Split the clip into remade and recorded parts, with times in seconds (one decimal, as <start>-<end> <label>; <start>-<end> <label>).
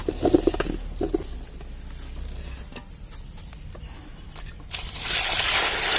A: 0.0-6.0 recorded